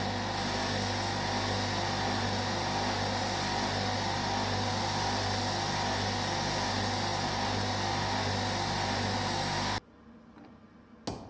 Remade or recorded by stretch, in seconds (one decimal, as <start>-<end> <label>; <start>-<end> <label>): 0.0-11.3 recorded

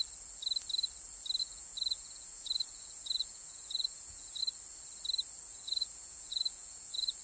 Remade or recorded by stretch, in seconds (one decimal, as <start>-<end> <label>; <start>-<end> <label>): 0.0-1.4 recorded; 1.4-4.4 remade; 4.4-5.5 recorded; 5.5-7.2 remade